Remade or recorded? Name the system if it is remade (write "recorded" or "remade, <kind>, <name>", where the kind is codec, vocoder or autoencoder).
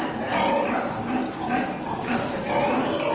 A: recorded